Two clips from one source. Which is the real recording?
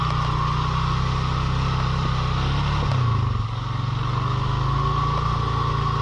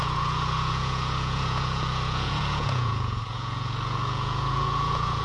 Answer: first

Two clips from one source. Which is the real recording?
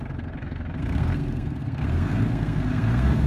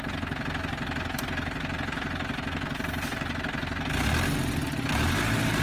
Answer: second